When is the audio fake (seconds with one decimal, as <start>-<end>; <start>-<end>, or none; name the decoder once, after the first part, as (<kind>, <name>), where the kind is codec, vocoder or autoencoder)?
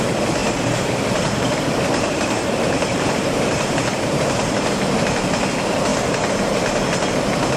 0.4-5.0 (vocoder, BigVGAN v2)